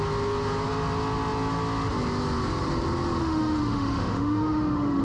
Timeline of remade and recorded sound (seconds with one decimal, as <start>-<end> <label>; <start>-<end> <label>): 0.0-3.2 recorded; 3.2-5.0 remade